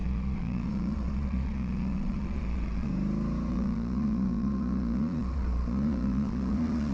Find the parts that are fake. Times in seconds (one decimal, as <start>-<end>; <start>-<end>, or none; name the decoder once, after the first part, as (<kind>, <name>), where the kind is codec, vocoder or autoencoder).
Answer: 0.0-2.9 (vocoder, Vocos); 3.5-6.9